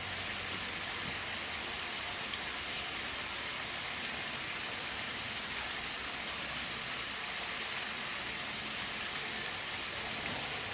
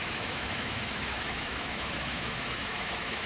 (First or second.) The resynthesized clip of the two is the second